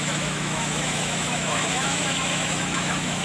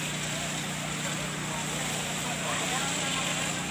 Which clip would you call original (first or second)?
second